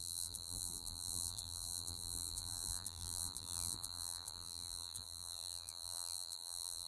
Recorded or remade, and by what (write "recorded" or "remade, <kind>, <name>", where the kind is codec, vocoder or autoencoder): remade, vocoder, BigVGAN v2